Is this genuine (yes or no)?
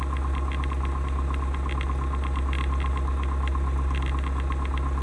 yes